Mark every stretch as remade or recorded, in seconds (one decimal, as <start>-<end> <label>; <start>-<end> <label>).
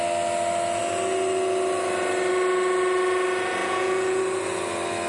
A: 0.0-3.6 recorded; 3.6-4.2 remade; 4.2-5.1 recorded